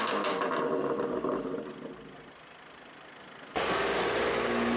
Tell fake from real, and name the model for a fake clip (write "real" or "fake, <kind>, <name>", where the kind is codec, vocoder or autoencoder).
real